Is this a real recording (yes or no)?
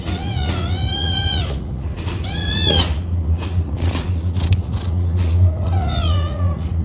no